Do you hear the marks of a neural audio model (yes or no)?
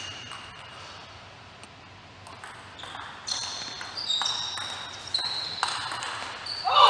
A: no